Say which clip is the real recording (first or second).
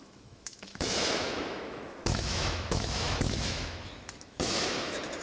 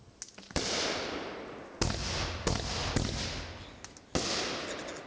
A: second